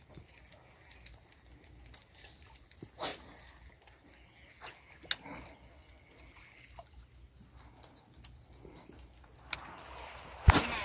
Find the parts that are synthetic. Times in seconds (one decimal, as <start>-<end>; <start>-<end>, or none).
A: none